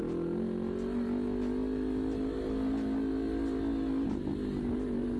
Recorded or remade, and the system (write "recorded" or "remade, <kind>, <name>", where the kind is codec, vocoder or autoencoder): recorded